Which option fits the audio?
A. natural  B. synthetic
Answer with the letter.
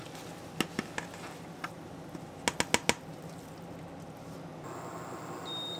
A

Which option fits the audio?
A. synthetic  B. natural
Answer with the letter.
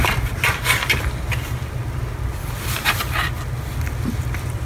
B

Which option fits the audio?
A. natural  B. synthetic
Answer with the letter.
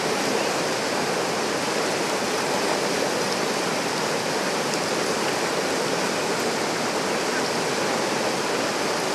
A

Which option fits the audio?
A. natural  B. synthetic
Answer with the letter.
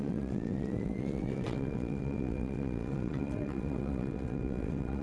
B